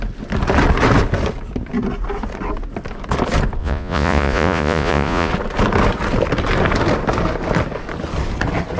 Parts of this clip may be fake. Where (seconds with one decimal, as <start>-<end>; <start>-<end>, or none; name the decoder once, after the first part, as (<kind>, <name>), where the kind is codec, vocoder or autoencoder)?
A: 3.6-5.3 (vocoder, Vocos)